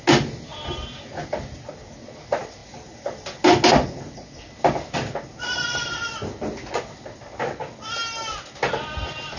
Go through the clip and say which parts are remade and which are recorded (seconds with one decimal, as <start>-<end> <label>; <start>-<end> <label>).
0.0-9.4 recorded